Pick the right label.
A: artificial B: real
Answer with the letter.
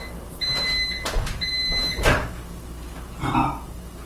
B